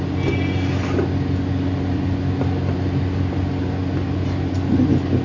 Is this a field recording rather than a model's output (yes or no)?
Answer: yes